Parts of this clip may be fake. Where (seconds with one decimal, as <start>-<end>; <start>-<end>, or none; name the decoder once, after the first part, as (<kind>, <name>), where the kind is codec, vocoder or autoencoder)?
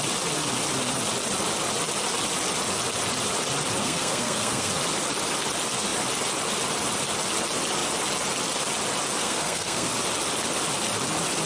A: 3.8-4.7 (codec, SNAC); 9.2-9.9